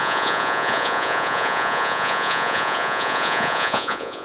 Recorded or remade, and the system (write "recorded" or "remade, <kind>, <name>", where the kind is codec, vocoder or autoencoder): remade, vocoder, Vocos